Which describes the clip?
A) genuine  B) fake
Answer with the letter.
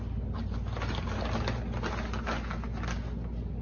A